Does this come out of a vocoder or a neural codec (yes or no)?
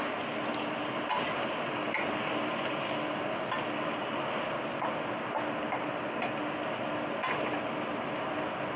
no